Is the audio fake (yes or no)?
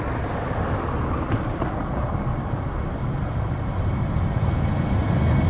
no